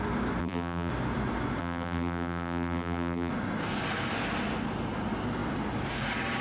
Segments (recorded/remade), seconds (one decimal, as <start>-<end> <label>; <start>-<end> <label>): 0.0-0.4 recorded; 0.4-0.9 remade; 0.9-1.6 recorded; 1.6-3.3 remade; 3.3-6.4 recorded